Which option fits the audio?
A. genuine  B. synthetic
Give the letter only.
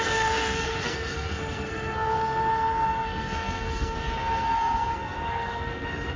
B